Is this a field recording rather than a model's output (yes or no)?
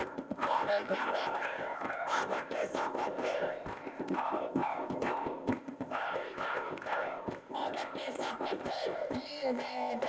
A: no